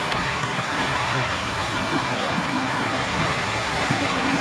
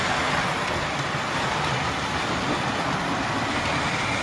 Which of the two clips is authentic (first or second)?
second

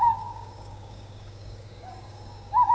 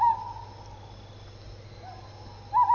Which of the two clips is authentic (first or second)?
second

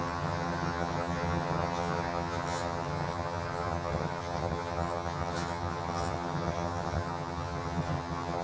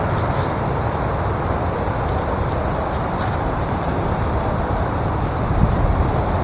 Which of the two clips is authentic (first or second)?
second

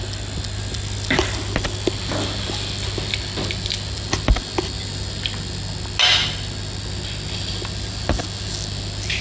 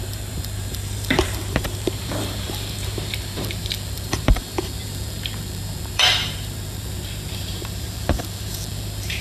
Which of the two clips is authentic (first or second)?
first